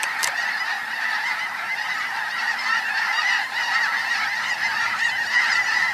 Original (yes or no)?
no